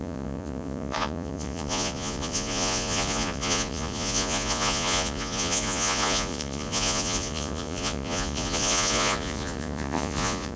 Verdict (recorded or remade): remade